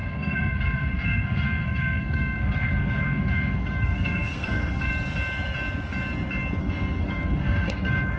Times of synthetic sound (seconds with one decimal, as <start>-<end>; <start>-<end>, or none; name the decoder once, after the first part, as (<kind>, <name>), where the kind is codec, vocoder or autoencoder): 0.0-4.9 (codec, SNAC); 6.6-8.2